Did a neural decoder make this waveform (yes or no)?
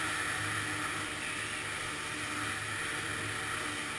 no